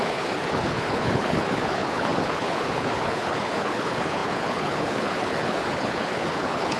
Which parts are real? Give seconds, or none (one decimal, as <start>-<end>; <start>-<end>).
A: none